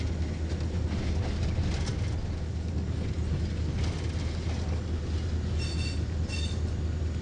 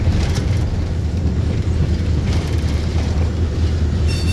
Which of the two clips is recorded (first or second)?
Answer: first